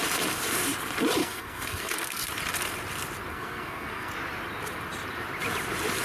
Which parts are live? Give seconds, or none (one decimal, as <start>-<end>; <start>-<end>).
0.0-1.2; 2.3-3.3; 4.1-6.0